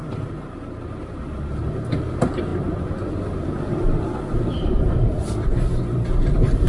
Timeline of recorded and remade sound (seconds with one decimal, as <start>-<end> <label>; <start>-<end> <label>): 0.0-6.7 remade